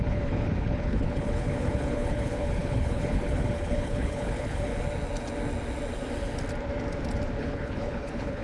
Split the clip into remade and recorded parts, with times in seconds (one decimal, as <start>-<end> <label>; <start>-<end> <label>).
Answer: 0.0-4.7 remade; 4.7-7.4 recorded; 7.4-8.4 remade